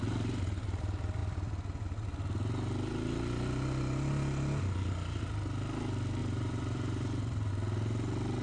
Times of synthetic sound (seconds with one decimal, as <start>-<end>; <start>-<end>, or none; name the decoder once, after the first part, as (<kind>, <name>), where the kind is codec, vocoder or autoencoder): 6.2-7.5 (vocoder, BigVGAN v2)